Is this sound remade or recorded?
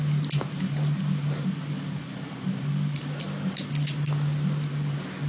recorded